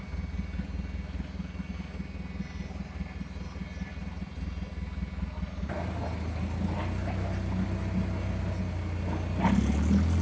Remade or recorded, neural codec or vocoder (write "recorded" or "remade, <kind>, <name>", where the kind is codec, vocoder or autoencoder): recorded